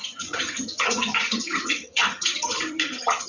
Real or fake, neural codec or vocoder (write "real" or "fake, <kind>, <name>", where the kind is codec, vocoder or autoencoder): fake, vocoder, HiFi-GAN